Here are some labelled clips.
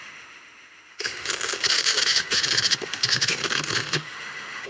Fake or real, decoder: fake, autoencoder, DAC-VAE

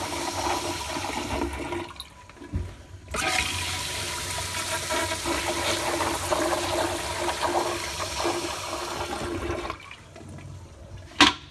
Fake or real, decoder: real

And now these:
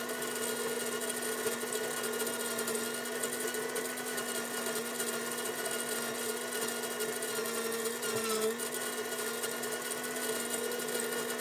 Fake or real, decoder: real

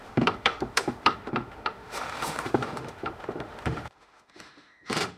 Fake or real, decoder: fake, autoencoder, DAC-VAE